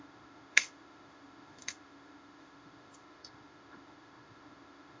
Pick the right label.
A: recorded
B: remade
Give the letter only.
B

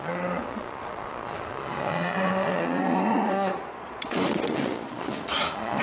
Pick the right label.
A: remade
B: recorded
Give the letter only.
A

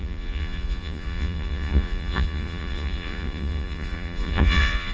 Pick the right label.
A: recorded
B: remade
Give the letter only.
B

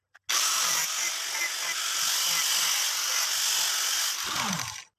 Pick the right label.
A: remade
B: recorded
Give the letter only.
B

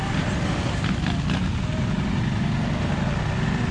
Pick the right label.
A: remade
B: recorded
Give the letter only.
B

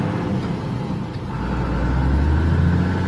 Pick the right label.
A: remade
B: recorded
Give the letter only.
B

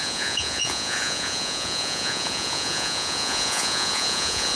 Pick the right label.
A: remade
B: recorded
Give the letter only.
A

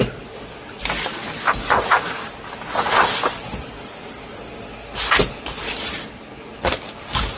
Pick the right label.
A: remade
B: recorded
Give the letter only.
B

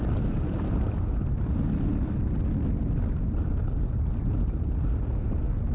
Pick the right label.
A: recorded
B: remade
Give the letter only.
A